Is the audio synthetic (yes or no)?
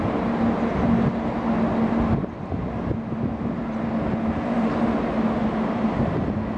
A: no